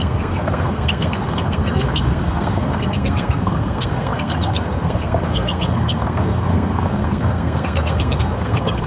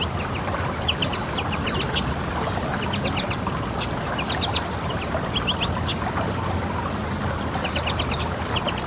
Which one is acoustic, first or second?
second